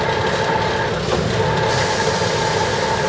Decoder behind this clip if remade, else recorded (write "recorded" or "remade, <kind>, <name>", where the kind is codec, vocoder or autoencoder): recorded